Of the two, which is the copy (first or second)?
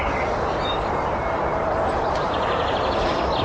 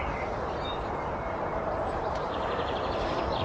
second